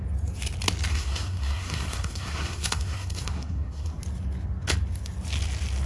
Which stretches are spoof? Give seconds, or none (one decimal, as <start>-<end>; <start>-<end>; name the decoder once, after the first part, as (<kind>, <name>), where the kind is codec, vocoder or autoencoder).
0.9-4.0 (codec, SNAC)

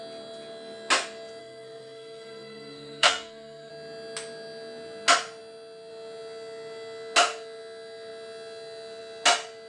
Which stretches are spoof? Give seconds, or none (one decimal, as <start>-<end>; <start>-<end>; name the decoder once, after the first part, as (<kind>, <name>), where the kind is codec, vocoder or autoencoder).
1.4-3.7 (codec, SNAC)

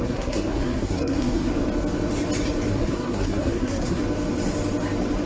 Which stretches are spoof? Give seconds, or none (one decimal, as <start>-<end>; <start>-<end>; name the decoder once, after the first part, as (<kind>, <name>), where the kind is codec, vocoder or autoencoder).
0.0-1.5 (codec, SNAC); 2.7-4.0